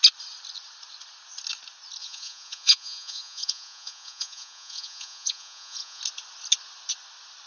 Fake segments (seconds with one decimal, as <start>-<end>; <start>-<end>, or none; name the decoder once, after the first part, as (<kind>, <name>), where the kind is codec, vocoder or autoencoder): 2.0-6.0 (vocoder, Vocos)